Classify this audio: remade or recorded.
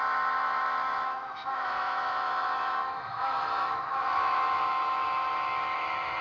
remade